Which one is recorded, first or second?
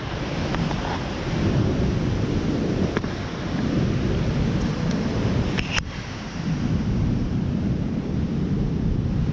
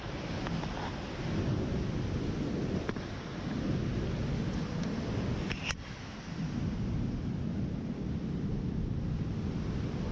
second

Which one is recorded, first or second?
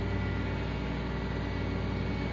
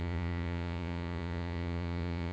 first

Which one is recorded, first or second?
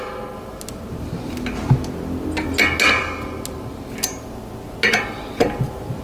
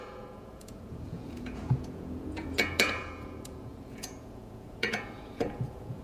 first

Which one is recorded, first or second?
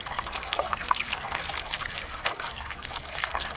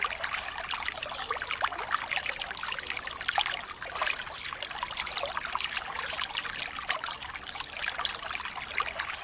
second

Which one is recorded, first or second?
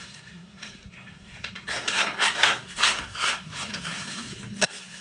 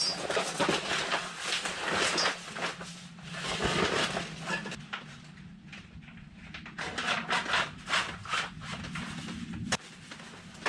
second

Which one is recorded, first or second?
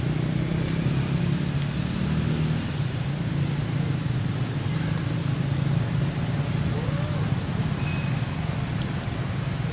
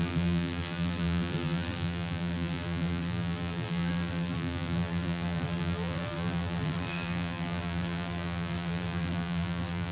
first